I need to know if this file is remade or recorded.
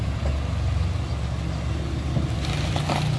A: recorded